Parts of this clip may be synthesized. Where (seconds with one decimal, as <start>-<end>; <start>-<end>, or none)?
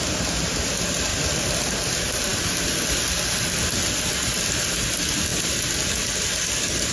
none